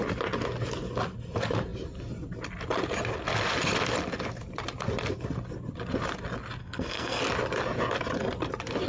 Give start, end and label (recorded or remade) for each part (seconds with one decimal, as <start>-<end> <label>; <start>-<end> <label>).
0.0-6.6 recorded; 6.6-7.2 remade; 7.2-8.9 recorded